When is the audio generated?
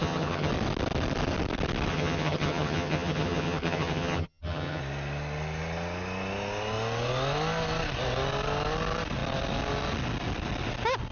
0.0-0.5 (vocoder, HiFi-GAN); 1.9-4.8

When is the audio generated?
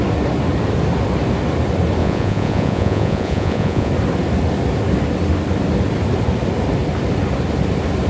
2.0-3.9 (vocoder, Vocos)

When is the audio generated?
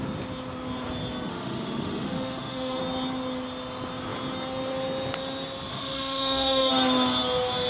1.3-2.8 (autoencoder, DAC-VAE); 5.7-6.7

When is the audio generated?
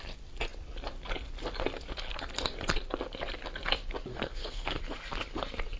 4.1-4.8 (codec, SNAC)